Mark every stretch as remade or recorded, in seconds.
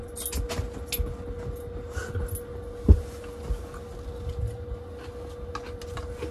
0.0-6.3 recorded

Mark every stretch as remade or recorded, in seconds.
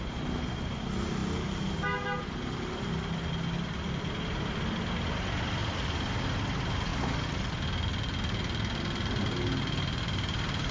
0.0-10.7 recorded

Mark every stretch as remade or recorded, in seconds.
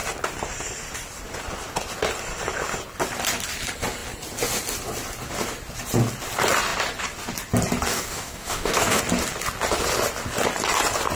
0.0-7.9 recorded; 7.9-9.0 remade; 9.0-11.1 recorded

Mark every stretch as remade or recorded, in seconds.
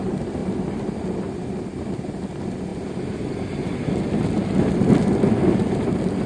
0.0-6.3 recorded